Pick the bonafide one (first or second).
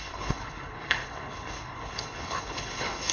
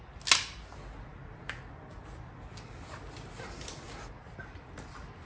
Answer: second